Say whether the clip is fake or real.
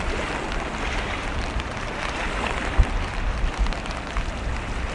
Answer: real